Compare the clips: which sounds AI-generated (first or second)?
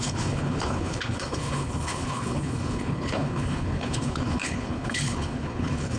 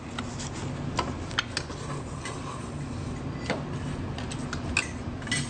first